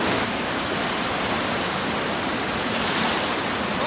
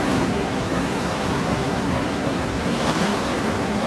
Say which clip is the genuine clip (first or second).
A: first